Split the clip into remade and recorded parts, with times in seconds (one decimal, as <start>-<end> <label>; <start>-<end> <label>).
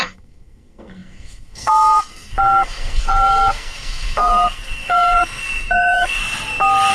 0.0-6.2 remade; 6.2-6.9 recorded